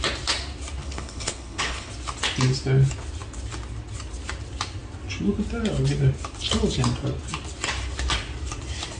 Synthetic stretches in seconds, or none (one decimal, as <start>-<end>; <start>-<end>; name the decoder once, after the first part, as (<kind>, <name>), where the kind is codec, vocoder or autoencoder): 0.8-1.9 (codec, HILCodec)